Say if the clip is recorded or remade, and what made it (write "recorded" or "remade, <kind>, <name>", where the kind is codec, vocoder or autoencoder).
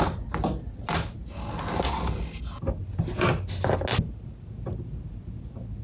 recorded